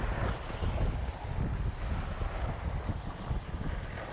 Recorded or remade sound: recorded